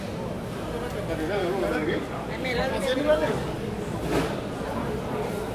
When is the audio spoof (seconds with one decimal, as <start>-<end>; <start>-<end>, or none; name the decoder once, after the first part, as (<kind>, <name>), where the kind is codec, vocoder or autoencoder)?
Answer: 1.4-4.0 (codec, DAC)